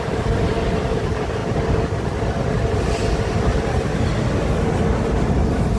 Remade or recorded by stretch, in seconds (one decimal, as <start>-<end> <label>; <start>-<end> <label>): 0.0-5.8 recorded